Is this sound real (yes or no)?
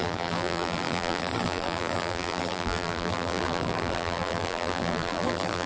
no